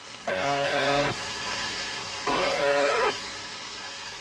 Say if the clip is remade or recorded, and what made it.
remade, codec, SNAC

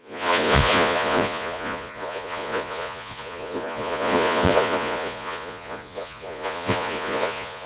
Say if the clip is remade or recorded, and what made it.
remade, vocoder, Vocos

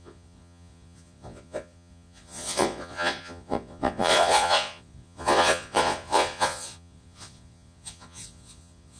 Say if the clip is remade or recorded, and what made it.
remade, vocoder, Vocos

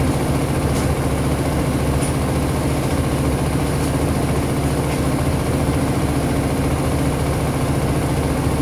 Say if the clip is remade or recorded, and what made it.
recorded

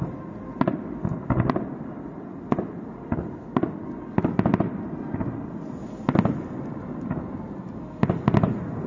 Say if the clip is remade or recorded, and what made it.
recorded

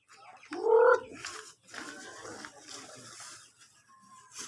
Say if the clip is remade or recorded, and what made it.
recorded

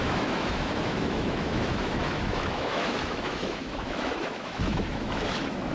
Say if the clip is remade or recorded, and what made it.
remade, autoencoder, DAC-VAE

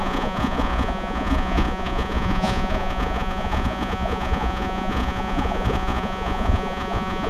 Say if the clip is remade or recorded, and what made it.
remade, vocoder, Vocos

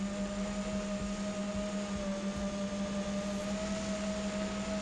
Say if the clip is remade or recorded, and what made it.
recorded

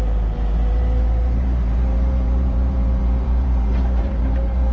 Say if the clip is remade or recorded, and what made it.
remade, vocoder, BigVGAN v2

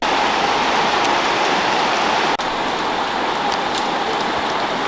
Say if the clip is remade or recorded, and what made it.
recorded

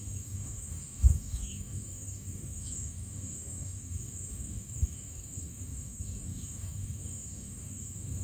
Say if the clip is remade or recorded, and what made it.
remade, codec, DAC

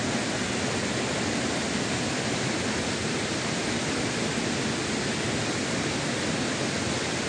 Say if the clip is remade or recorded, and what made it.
recorded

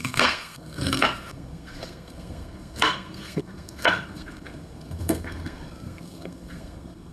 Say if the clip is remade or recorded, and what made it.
remade, codec, SNAC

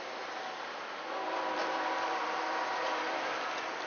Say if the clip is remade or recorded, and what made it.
remade, vocoder, BigVGAN v2